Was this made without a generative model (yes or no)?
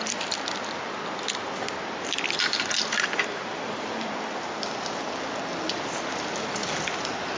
yes